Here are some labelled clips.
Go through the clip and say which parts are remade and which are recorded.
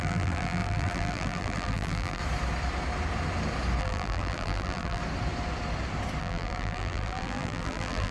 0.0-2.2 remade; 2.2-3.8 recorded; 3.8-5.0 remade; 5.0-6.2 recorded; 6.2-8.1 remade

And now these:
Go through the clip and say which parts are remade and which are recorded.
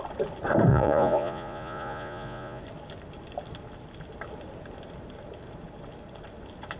0.0-0.7 recorded; 0.7-2.6 remade; 2.6-6.8 recorded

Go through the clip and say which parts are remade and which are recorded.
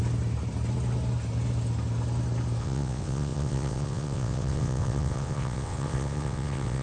0.0-2.6 recorded; 2.6-6.8 remade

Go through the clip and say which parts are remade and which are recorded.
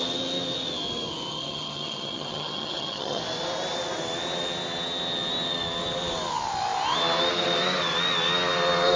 0.0-1.3 recorded; 1.3-3.2 remade; 3.2-9.0 recorded